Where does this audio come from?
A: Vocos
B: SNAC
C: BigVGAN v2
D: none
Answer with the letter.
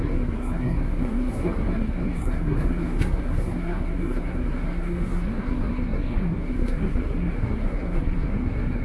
B